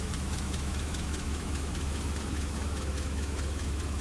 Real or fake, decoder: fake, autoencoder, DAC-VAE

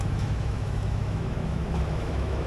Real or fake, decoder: fake, autoencoder, DAC-VAE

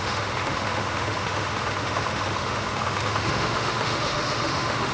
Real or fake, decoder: fake, autoencoder, DAC-VAE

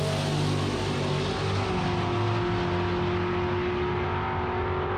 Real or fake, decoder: real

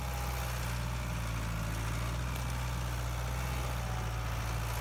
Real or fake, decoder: real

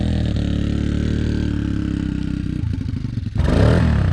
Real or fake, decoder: real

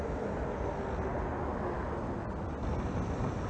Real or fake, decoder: real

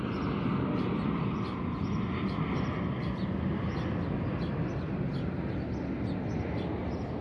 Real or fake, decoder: real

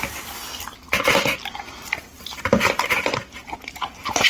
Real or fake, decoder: real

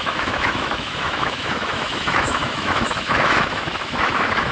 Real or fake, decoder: fake, autoencoder, DAC-VAE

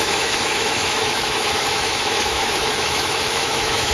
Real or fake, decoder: fake, autoencoder, DAC-VAE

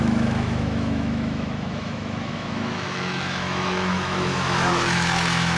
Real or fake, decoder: fake, autoencoder, DAC-VAE